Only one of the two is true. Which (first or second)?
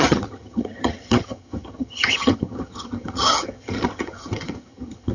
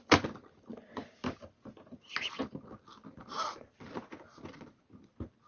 second